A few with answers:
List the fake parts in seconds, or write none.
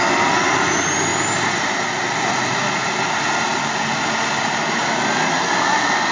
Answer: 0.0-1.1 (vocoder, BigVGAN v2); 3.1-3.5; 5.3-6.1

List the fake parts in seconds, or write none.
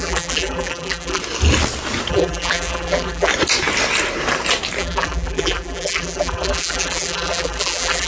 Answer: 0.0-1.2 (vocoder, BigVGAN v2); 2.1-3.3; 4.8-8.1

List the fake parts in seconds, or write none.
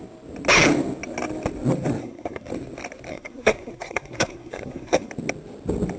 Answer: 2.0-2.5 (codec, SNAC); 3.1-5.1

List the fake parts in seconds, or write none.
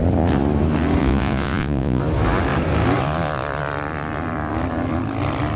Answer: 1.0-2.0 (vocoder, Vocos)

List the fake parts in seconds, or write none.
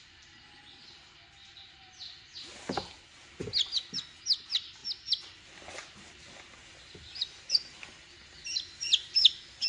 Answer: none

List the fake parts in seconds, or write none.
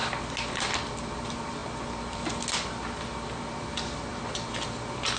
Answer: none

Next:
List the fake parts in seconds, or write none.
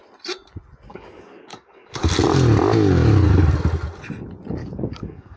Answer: 0.9-2.1 (codec, DAC); 4.6-5.4